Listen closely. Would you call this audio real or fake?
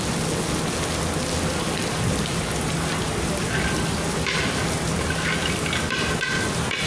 real